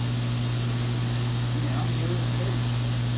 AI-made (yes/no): no